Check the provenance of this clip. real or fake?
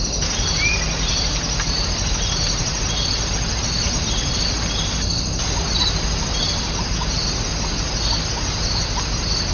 real